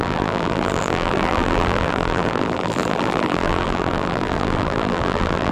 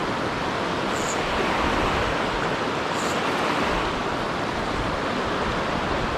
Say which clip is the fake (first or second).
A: first